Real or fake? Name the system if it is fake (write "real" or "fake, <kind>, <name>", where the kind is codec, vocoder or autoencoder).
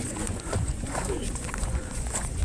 fake, vocoder, Vocos